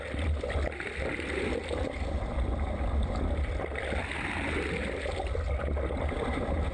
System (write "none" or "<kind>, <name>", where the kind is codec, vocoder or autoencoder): none